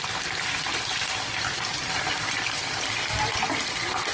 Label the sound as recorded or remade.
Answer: recorded